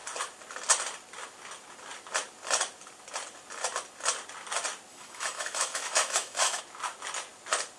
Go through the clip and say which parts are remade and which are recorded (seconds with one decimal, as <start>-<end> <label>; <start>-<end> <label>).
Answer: 0.0-4.9 recorded; 4.9-6.6 remade; 6.6-7.8 recorded